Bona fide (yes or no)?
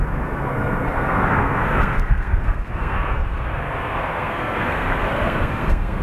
no